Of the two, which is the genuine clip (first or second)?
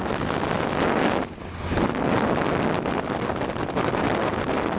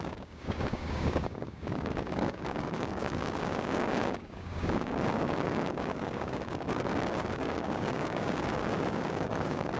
first